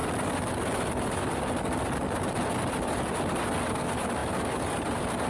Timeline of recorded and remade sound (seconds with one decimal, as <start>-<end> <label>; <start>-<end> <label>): 0.0-4.2 recorded; 4.2-5.3 remade